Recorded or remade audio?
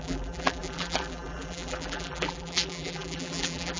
remade